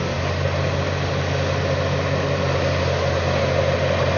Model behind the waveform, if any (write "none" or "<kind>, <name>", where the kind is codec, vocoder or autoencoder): none